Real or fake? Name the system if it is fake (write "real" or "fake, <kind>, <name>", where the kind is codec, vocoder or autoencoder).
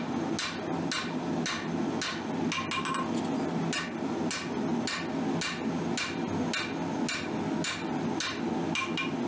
real